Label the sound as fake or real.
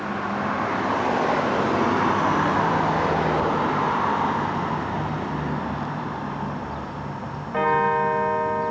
real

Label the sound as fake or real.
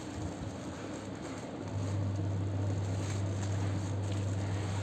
real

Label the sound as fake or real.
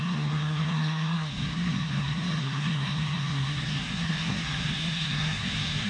fake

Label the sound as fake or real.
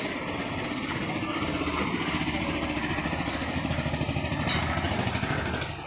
real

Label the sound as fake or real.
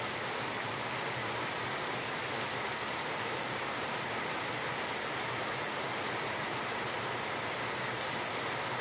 real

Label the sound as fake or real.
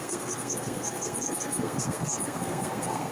fake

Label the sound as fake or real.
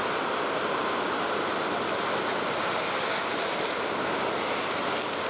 real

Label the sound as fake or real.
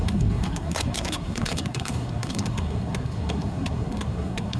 fake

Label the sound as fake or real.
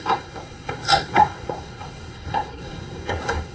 fake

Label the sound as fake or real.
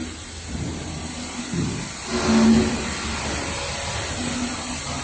real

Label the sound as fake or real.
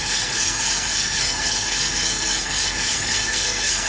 fake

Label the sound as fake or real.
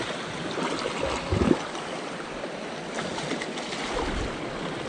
real